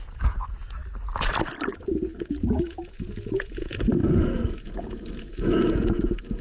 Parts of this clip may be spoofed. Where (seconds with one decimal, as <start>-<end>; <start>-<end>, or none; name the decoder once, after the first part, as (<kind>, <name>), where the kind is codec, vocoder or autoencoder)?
0.0-0.8 (vocoder, Vocos); 1.7-6.4